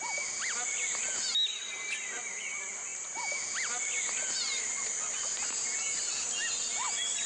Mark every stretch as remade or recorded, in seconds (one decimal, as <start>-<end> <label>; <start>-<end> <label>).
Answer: 0.0-7.3 recorded

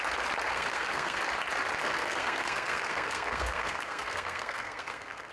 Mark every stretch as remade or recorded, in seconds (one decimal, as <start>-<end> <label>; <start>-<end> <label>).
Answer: 0.0-0.5 recorded; 0.5-1.2 remade; 1.2-1.8 recorded; 1.8-5.3 remade

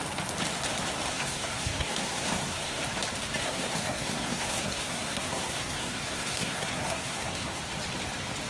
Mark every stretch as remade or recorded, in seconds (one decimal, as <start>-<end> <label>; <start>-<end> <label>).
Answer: 0.0-1.1 recorded; 1.1-2.8 remade; 2.8-3.4 recorded; 3.4-7.6 remade; 7.6-8.5 recorded

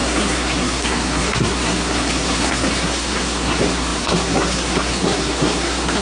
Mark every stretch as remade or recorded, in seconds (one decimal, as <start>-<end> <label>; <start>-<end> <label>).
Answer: 0.0-6.0 remade

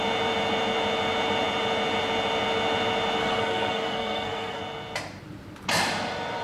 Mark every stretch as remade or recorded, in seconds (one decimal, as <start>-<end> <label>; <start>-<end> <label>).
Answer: 0.0-3.2 recorded; 3.2-4.6 remade; 4.6-6.4 recorded